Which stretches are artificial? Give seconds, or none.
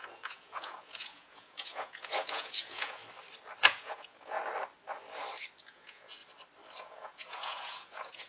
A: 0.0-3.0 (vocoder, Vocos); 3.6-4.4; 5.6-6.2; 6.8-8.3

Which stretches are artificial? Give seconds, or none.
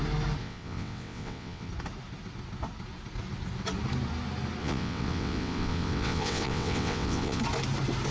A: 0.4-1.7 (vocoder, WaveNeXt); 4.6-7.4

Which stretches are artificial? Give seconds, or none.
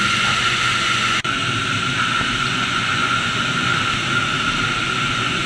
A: 0.0-1.4 (vocoder, Vocos); 2.3-3.7; 4.8-5.5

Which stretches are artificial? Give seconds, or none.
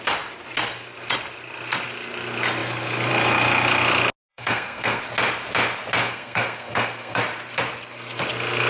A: 4.3-5.0 (codec, SNAC); 6.0-7.2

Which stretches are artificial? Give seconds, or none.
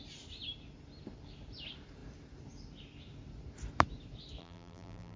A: 4.4-5.2 (vocoder, BigVGAN v2)